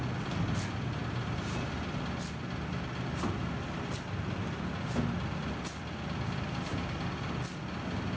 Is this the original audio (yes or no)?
yes